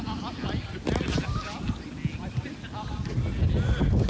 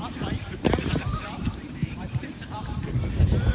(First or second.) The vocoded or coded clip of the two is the second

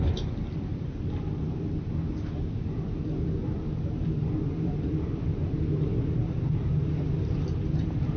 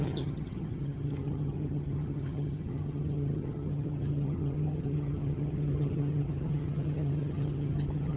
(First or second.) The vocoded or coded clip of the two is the second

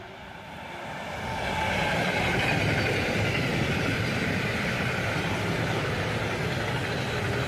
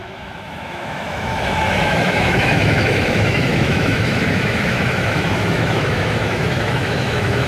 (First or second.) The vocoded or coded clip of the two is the second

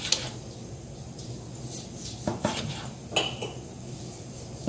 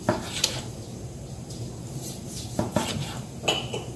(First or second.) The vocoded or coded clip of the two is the second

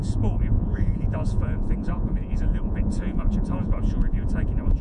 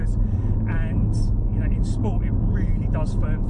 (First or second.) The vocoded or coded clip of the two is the first